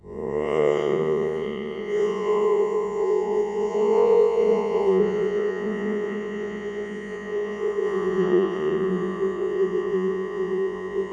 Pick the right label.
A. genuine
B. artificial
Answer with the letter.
B